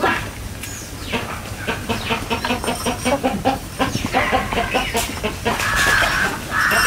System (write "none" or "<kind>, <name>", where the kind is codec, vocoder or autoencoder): none